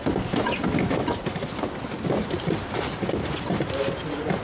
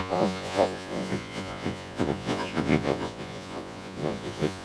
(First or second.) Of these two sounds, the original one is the first